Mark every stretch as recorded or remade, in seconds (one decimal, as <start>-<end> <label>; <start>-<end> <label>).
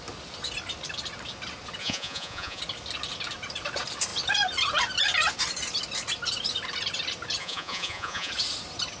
0.0-1.8 recorded; 1.8-2.6 remade; 2.6-7.4 recorded; 7.4-8.3 remade; 8.3-9.0 recorded